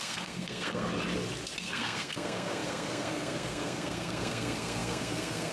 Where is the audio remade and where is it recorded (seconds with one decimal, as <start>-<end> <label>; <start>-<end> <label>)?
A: 0.0-0.9 remade; 0.9-1.6 recorded; 1.6-5.5 remade